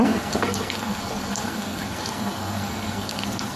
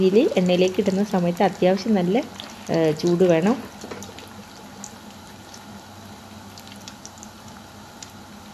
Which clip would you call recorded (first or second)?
second